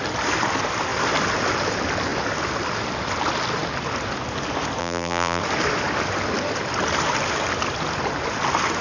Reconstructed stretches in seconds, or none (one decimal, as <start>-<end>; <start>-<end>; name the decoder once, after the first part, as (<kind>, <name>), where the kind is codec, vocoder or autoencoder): 4.8-5.4 (vocoder, BigVGAN v2)